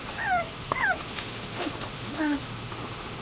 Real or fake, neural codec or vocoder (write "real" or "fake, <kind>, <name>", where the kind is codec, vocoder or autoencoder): fake, autoencoder, DAC-VAE